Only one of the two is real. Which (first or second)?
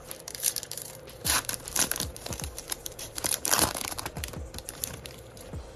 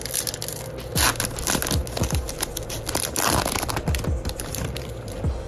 second